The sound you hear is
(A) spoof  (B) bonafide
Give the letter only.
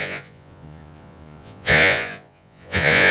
A